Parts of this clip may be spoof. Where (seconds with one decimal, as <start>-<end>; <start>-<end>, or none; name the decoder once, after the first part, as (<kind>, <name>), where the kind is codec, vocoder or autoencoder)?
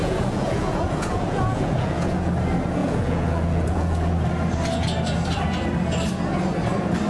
0.0-2.3 (vocoder, Vocos); 2.8-4.1